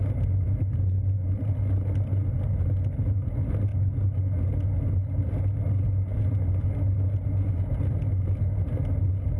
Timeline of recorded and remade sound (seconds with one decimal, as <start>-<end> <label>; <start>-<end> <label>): 0.0-9.4 recorded